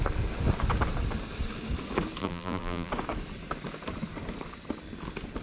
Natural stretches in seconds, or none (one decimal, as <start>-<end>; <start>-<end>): 0.0-2.2; 2.9-5.4